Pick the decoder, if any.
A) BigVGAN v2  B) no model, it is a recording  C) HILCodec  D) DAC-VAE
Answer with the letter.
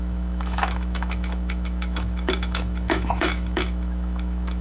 D